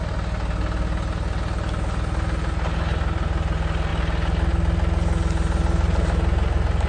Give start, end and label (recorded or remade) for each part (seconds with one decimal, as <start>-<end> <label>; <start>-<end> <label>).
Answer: 0.0-6.9 recorded